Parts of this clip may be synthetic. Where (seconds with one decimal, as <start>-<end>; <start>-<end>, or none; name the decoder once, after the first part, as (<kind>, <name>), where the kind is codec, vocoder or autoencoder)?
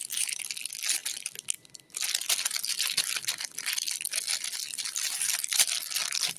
none